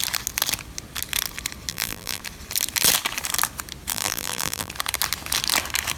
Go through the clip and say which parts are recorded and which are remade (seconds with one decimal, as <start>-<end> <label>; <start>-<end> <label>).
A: 0.0-1.7 recorded; 1.7-2.2 remade; 2.2-3.9 recorded; 3.9-4.7 remade; 4.7-6.0 recorded